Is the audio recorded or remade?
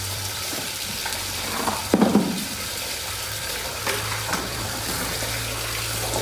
remade